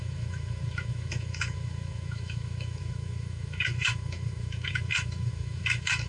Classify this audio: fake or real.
fake